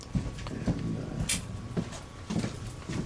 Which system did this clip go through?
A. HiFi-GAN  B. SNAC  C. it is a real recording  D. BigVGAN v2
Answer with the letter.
C